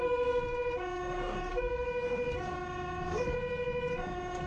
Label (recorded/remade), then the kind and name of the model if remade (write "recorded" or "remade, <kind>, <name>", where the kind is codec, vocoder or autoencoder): remade, codec, DAC